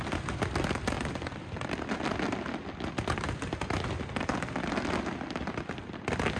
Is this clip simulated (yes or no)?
no